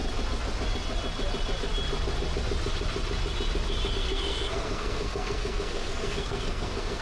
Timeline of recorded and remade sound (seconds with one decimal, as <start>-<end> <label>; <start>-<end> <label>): 0.0-3.9 recorded; 3.9-7.0 remade